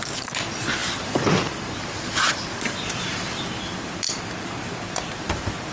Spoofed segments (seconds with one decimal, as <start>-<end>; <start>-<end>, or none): 0.8-4.2